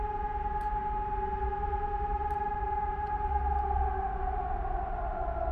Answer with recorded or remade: recorded